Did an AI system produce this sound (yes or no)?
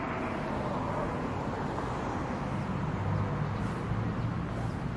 no